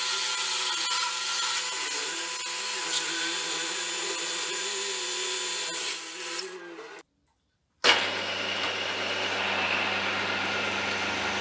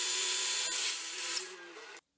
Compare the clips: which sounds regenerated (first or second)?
second